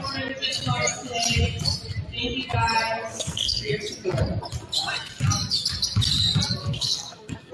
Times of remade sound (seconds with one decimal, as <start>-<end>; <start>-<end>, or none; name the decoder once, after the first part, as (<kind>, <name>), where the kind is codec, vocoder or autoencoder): 3.1-3.7 (codec, SNAC); 6.6-7.5